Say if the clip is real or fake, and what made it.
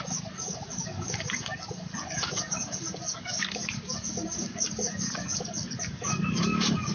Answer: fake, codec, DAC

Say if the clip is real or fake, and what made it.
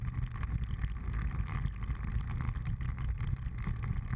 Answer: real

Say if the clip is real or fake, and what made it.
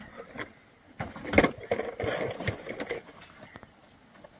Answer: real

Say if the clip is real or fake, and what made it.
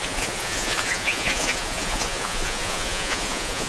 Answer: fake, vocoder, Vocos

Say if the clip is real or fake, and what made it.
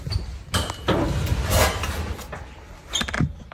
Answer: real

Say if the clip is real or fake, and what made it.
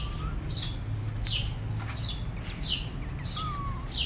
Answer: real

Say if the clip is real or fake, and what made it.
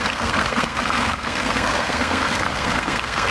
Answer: fake, codec, SNAC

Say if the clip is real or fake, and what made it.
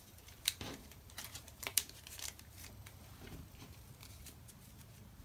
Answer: fake, vocoder, BigVGAN v2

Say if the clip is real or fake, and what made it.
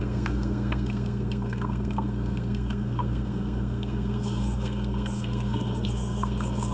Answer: fake, codec, SNAC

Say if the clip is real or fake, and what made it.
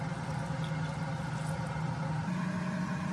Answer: real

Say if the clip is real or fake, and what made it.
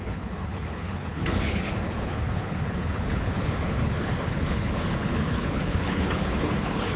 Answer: fake, codec, HILCodec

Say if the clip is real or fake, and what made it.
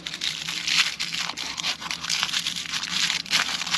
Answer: fake, vocoder, BigVGAN v2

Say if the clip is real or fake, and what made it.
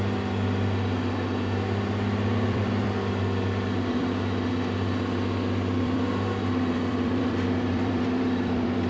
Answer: fake, vocoder, BigVGAN v2